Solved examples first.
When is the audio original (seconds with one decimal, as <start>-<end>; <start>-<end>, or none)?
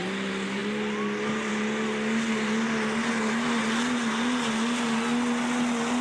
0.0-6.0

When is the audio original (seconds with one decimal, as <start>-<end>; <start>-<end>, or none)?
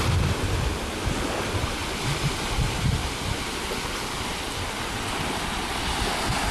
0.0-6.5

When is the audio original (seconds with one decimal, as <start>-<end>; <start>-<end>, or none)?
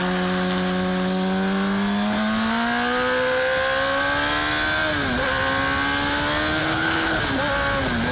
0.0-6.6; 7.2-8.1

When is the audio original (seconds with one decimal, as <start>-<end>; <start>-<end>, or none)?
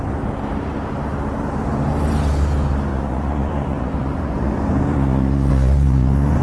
0.0-2.9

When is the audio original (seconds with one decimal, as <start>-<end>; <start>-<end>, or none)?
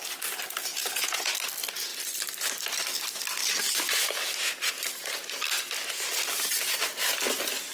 0.0-0.7; 1.3-7.7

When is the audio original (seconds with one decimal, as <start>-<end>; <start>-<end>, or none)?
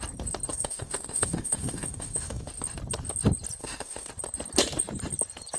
0.0-0.5; 2.5-3.6; 4.1-5.6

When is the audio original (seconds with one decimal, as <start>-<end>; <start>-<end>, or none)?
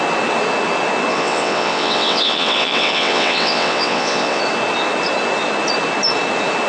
0.0-1.1; 4.4-6.7